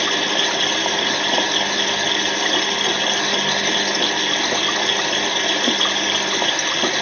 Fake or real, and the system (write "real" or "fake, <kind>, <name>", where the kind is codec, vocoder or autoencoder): real